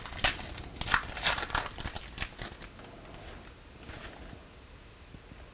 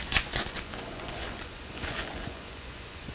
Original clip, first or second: first